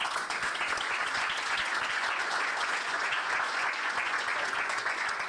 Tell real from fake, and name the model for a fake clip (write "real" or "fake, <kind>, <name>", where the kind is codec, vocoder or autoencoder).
fake, vocoder, Vocos